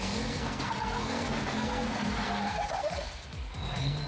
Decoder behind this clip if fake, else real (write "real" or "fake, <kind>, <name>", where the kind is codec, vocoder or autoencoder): fake, codec, SNAC